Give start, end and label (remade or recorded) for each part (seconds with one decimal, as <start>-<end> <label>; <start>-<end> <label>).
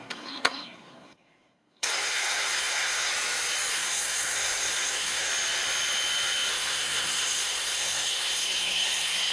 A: 0.0-3.1 remade; 3.1-3.7 recorded; 3.7-5.3 remade; 5.3-6.5 recorded; 6.5-9.3 remade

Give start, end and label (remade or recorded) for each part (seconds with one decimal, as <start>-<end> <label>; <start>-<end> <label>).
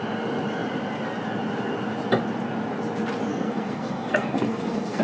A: 0.0-3.3 recorded; 3.3-5.0 remade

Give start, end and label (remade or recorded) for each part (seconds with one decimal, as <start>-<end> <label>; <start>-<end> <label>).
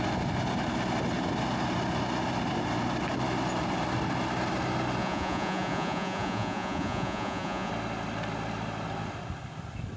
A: 0.0-5.0 recorded; 5.0-7.7 remade; 7.7-10.0 recorded